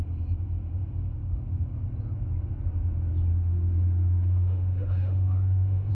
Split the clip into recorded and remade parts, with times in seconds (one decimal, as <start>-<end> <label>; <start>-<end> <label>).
0.0-3.3 recorded; 3.3-5.9 remade